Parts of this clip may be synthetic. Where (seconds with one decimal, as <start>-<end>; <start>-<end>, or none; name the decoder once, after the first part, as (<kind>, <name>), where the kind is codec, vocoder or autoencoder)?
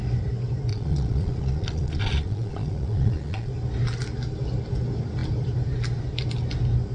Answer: 0.7-3.5 (vocoder, Vocos)